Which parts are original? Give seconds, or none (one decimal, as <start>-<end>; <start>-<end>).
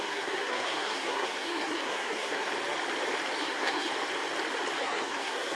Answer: 2.5-3.4; 3.9-4.8